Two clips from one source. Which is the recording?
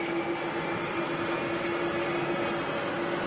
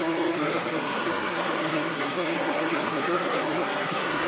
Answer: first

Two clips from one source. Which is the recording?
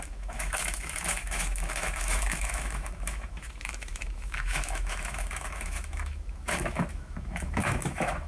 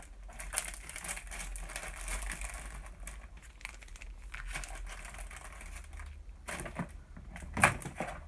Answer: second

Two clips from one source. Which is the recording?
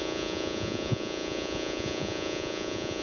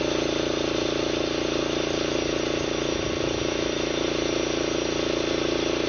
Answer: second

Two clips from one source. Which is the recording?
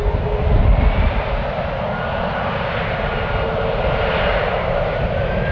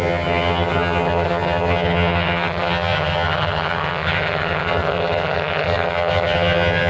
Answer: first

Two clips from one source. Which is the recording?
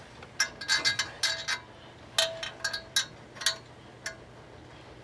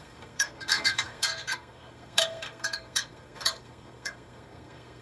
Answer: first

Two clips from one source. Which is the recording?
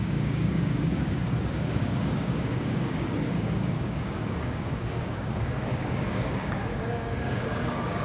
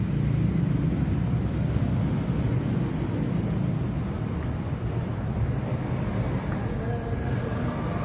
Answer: second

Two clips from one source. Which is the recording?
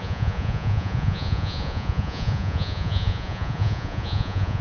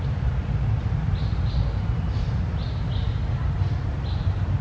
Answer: second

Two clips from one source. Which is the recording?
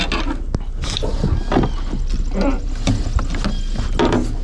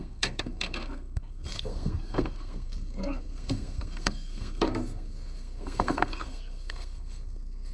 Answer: first